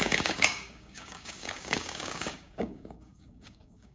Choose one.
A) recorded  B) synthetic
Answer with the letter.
B